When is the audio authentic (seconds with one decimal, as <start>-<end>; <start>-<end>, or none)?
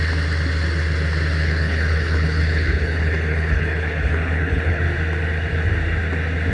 0.0-1.4; 4.8-6.5